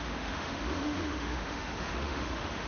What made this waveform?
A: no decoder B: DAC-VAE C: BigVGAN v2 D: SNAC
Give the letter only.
B